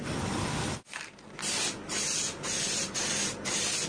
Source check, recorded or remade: recorded